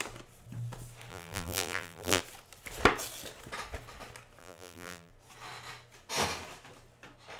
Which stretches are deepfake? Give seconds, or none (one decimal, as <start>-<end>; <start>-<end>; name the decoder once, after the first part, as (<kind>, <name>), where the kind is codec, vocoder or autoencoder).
1.1-2.2 (vocoder, BigVGAN v2); 4.4-5.1